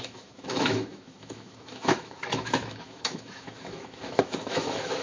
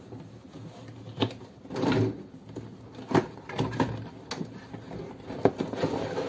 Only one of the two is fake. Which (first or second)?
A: first